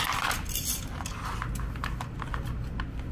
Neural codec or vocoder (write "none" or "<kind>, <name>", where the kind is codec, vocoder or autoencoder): none